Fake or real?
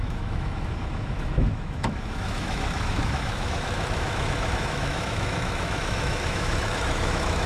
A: fake